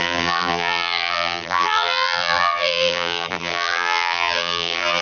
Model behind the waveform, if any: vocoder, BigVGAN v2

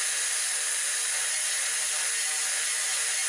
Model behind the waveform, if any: none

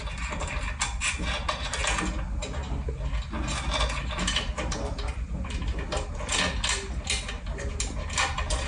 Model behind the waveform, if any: none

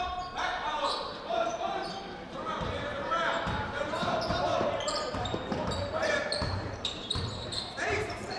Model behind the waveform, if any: vocoder, BigVGAN v2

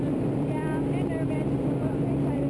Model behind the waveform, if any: vocoder, BigVGAN v2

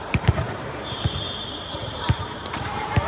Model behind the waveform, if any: vocoder, BigVGAN v2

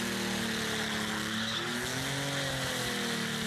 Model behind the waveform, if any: none